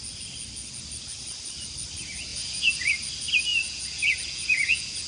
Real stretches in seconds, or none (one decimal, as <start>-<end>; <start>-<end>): 0.0-2.3; 2.9-3.5